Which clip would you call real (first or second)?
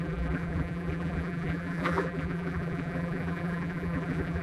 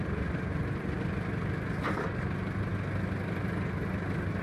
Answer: second